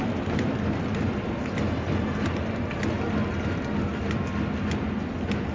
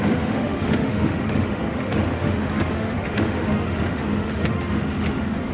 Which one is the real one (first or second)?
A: first